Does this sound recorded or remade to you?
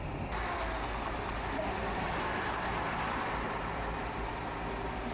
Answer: recorded